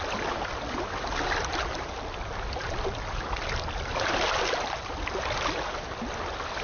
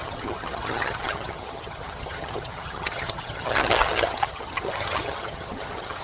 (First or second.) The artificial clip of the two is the second